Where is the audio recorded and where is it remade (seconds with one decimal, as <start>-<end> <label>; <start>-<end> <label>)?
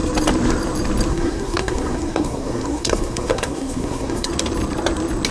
0.0-1.1 recorded; 1.1-4.3 remade; 4.3-5.3 recorded